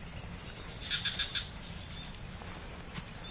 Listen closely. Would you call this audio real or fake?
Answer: real